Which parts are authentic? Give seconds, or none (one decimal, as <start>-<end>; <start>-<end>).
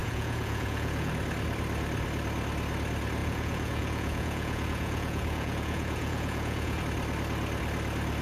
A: 1.1-3.2; 6.8-8.2